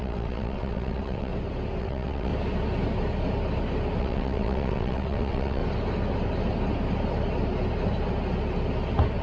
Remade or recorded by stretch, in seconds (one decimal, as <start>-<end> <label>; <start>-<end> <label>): 0.0-1.3 remade; 1.3-1.8 recorded; 1.8-2.3 remade; 2.3-4.0 recorded; 4.0-5.6 remade; 5.6-9.2 recorded